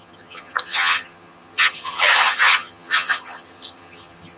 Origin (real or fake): fake